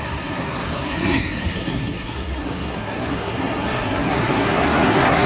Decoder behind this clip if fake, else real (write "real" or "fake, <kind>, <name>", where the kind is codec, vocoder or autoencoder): fake, codec, SNAC